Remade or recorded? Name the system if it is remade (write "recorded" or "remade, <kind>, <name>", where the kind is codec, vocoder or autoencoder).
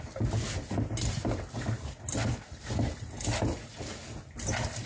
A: recorded